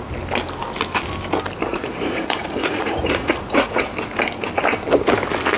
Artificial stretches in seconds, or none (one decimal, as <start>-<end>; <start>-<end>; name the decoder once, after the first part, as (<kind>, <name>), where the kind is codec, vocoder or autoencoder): 1.7-3.9 (vocoder, Vocos)